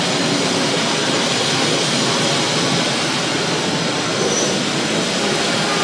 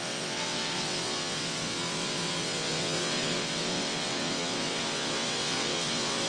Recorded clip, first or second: first